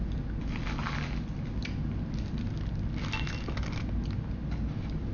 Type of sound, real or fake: real